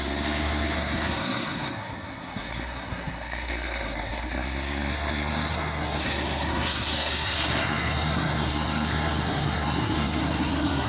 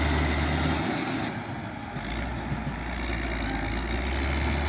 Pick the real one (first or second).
second